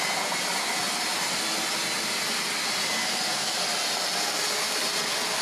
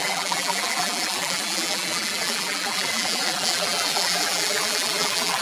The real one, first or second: first